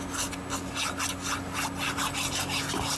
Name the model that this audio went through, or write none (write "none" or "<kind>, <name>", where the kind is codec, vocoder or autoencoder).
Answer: none